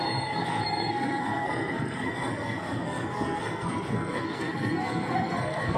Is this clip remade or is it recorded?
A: remade